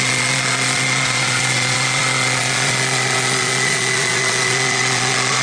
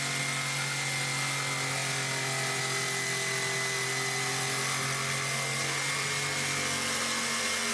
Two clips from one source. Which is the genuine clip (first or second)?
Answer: second